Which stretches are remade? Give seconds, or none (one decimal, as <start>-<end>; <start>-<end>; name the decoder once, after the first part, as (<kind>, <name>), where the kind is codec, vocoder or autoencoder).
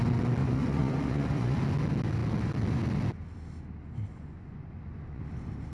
0.4-1.6 (vocoder, Vocos); 4.1-5.2